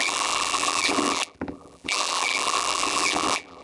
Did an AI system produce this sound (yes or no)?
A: yes